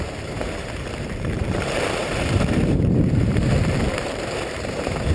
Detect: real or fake fake